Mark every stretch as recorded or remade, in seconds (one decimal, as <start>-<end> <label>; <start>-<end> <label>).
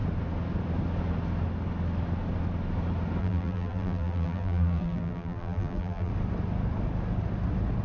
0.0-3.2 recorded; 3.2-6.1 remade; 6.1-7.8 recorded